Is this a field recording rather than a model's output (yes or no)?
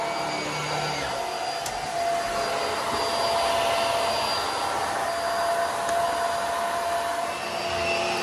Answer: yes